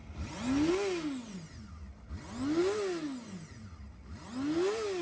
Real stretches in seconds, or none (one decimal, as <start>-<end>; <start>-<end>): 0.0-5.0